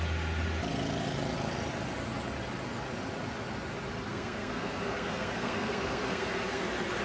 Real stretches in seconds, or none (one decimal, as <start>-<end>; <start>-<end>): 0.0-4.1; 6.6-7.0